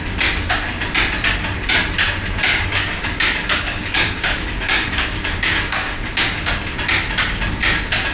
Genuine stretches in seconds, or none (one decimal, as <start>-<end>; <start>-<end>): 0.0-2.5; 6.5-8.1